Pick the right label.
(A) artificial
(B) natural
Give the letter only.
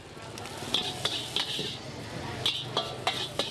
B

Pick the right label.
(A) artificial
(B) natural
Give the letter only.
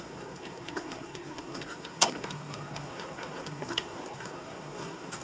A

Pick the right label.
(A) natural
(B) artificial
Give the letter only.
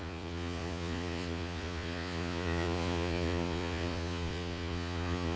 B